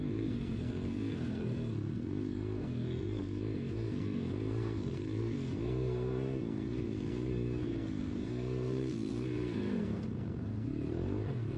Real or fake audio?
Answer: fake